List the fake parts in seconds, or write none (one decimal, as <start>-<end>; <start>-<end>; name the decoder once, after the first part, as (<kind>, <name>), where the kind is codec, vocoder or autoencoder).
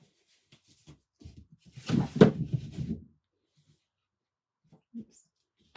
none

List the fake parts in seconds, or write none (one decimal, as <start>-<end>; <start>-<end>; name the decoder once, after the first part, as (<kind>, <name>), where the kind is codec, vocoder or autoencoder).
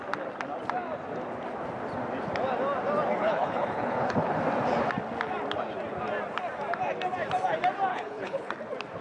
3.2-4.4 (codec, HILCodec); 7.9-8.5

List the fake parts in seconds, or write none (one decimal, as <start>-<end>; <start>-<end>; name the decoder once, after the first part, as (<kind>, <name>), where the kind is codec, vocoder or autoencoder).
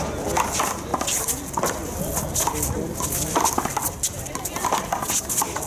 none